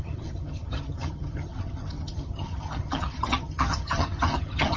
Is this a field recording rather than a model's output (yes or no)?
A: no